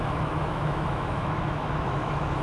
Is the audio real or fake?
fake